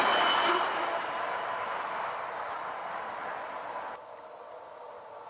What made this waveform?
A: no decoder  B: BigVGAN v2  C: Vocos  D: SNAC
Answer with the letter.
A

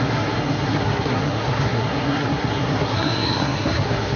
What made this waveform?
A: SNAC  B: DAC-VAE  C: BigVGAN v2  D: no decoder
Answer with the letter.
A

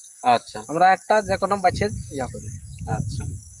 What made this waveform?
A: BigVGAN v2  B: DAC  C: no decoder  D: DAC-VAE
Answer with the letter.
B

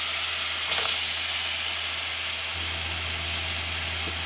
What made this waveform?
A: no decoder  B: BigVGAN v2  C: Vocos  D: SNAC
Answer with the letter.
A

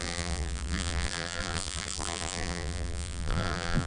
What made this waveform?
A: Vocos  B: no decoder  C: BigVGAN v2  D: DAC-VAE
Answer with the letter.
C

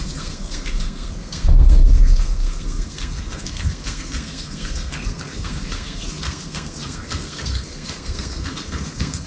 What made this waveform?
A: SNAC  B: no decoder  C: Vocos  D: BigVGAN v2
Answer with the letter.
A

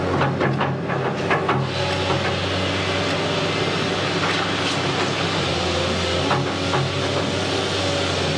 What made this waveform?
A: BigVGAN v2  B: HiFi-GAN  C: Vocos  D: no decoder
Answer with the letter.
D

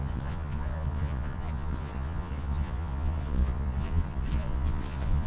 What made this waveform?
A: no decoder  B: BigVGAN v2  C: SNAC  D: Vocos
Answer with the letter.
D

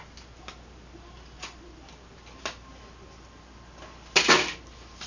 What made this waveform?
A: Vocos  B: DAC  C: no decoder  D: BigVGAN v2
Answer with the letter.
C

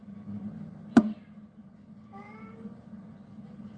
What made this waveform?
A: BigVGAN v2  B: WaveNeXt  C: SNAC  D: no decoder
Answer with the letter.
D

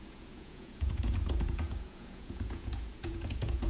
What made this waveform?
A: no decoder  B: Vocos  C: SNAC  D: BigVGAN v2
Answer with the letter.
B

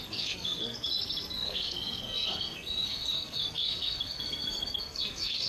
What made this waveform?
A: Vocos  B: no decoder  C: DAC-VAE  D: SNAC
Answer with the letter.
D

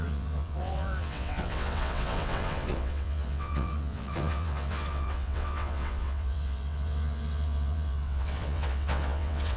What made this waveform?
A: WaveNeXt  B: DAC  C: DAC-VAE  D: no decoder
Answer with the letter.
A